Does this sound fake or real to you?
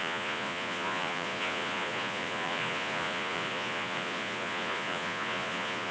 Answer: fake